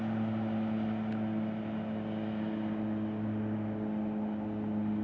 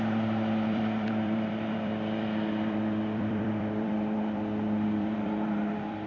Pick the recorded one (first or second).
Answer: first